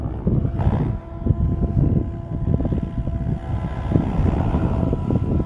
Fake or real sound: real